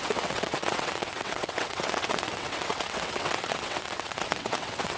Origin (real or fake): fake